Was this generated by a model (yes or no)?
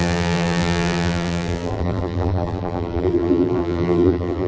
yes